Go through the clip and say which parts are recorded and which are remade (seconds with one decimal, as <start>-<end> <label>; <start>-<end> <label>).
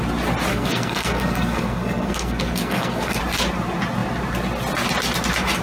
0.0-0.5 recorded; 0.5-3.2 remade; 3.2-5.6 recorded